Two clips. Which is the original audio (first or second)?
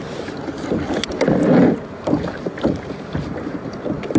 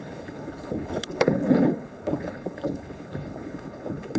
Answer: first